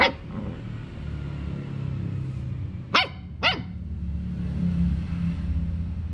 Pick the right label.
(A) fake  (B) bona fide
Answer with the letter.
B